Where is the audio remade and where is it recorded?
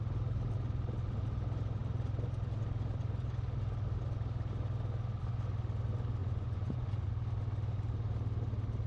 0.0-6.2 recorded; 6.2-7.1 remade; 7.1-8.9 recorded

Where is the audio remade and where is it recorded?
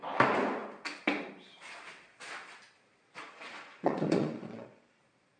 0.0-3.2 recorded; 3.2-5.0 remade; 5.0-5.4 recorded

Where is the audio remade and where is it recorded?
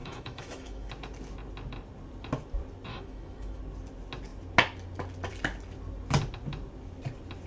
0.0-0.9 remade; 0.9-2.9 recorded; 2.9-3.6 remade; 3.6-7.5 recorded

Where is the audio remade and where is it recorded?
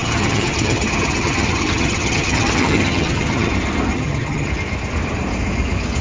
0.0-3.5 remade; 3.5-3.9 recorded; 3.9-4.5 remade; 4.5-6.0 recorded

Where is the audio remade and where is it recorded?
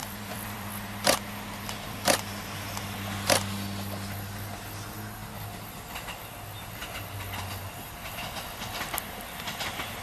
0.0-0.7 remade; 0.7-10.0 recorded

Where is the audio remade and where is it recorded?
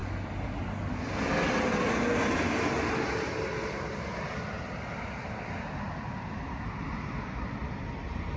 0.0-8.4 recorded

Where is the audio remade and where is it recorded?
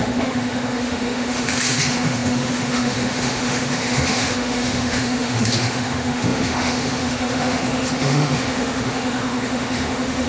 0.0-10.3 remade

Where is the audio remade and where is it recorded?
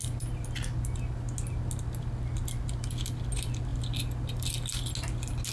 0.0-5.5 recorded